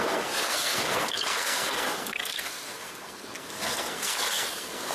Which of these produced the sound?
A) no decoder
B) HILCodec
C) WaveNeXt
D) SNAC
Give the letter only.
D